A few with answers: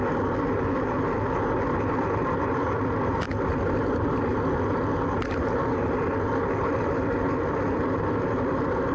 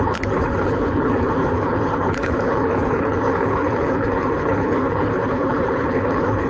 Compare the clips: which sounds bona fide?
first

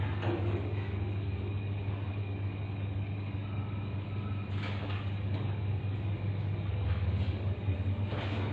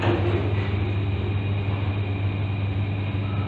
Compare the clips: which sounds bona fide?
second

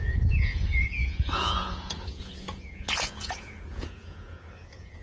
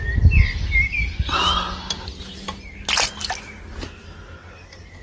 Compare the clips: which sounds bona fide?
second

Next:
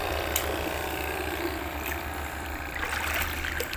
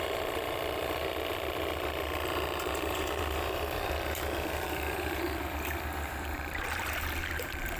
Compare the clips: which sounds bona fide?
first